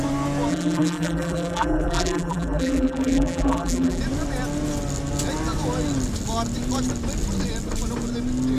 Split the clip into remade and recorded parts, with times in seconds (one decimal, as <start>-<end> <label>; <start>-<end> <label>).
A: 0.0-0.5 recorded; 0.5-4.0 remade; 4.0-8.6 recorded